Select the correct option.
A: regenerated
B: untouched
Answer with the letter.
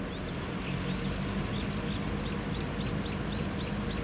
B